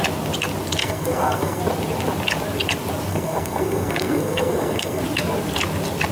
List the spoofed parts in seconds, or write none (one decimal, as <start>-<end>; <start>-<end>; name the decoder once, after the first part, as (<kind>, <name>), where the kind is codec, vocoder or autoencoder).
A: 0.8-1.6 (codec, SNAC); 3.1-5.0